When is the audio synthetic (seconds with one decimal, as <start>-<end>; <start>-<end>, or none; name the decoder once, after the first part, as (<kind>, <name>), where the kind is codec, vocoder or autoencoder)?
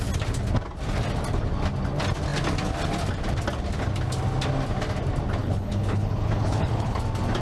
5.4-7.0 (codec, HILCodec)